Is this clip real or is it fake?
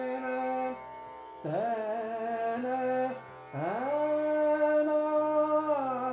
real